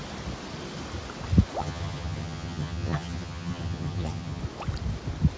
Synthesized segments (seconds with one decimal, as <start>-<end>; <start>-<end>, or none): 1.6-4.4

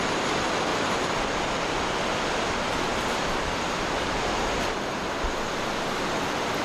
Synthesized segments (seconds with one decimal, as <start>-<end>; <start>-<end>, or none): none

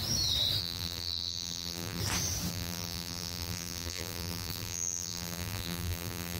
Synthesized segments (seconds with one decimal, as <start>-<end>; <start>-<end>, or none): 0.6-2.0; 2.5-6.4

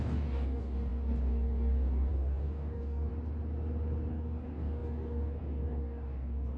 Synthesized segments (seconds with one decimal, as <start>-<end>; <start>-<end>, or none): 0.0-3.1; 4.1-6.6

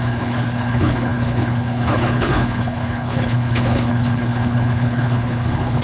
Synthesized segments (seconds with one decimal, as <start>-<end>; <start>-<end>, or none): 0.0-5.8